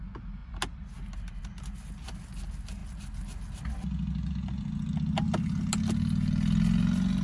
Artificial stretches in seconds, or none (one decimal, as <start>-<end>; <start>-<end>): none